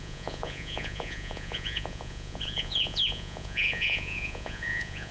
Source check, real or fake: fake